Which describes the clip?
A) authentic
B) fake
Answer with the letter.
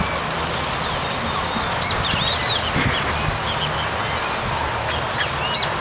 A